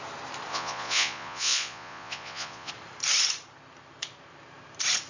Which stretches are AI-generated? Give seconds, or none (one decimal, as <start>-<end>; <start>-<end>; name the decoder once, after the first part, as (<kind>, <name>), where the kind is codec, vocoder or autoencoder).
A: 0.5-2.7 (vocoder, Vocos)